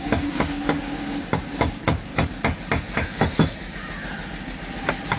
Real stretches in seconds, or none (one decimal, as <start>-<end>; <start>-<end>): 2.1-5.2